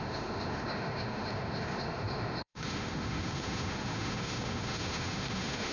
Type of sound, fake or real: fake